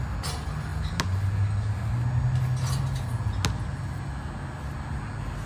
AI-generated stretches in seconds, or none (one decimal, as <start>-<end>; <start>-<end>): none